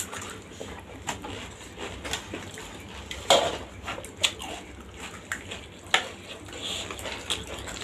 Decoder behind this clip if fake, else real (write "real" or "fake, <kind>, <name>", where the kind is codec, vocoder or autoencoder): real